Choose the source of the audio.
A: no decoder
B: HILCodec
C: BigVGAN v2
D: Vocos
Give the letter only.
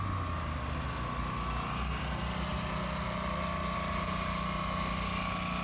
A